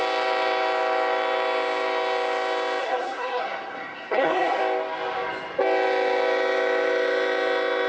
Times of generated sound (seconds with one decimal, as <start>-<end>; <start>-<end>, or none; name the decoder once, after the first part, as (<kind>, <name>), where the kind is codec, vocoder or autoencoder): 2.8-4.6 (codec, SNAC)